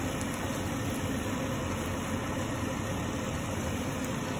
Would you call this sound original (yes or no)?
yes